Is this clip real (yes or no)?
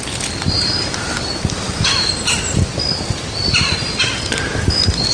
yes